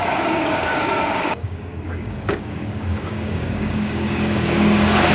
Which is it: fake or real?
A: fake